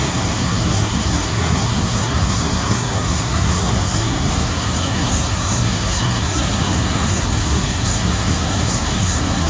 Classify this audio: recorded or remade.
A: remade